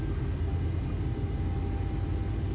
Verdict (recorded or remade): recorded